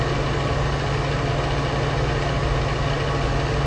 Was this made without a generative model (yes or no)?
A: yes